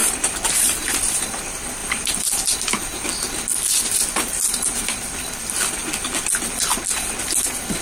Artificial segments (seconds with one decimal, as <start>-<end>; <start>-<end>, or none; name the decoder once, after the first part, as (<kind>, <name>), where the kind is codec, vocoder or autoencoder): 0.0-1.4 (vocoder, BigVGAN v2); 1.8-2.3